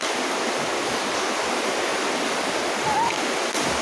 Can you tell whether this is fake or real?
real